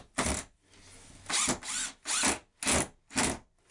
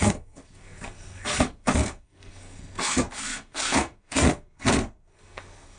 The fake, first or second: second